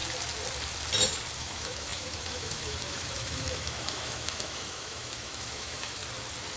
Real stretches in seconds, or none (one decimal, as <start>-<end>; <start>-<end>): 0.0-1.4; 6.0-6.6